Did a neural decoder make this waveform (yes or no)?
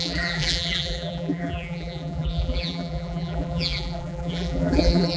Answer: yes